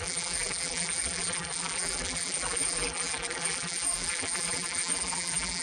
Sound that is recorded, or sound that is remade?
remade